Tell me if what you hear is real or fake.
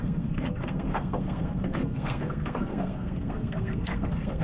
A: fake